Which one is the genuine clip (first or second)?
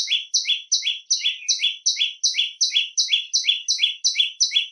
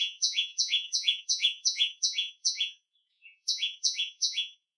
first